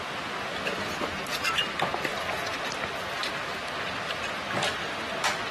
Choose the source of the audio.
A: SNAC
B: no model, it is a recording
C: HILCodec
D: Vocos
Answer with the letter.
B